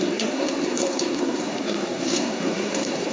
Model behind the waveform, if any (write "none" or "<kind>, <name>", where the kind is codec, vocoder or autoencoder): codec, SNAC